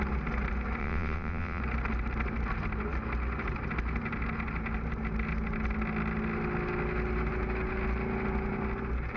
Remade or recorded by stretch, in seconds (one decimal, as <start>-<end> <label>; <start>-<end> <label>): 0.0-0.8 recorded; 0.8-1.6 remade; 1.6-9.2 recorded